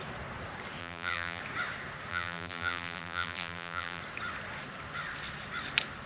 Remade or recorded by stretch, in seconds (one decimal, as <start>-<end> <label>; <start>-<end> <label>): 0.0-0.8 recorded; 0.8-1.4 remade; 1.4-2.1 recorded; 2.1-4.0 remade; 4.0-6.1 recorded